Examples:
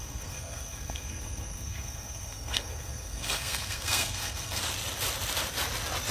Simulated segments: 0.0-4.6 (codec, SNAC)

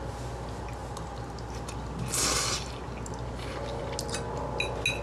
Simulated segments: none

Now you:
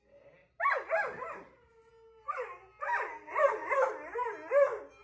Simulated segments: 0.4-1.9 (vocoder, BigVGAN v2)

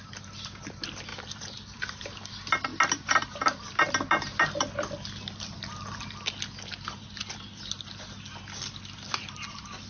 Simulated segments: 1.1-2.1 (vocoder, BigVGAN v2)

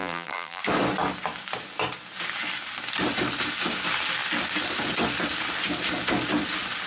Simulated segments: 0.0-0.6 (vocoder, BigVGAN v2)

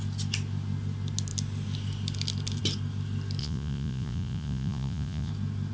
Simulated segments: 3.4-5.3 (vocoder, Vocos)

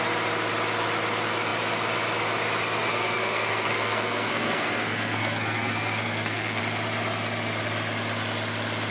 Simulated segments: 2.8-6.6 (codec, SNAC)

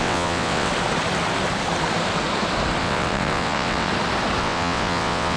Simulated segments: 0.0-0.7 (vocoder, WaveNeXt); 2.8-3.9; 4.4-5.4